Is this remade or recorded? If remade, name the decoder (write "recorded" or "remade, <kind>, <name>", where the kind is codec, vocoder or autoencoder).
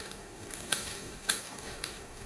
remade, codec, DAC